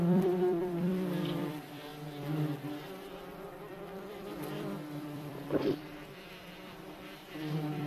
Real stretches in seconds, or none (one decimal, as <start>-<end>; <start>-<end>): 1.9-3.2